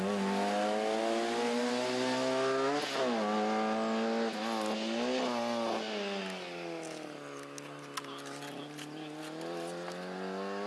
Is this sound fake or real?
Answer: real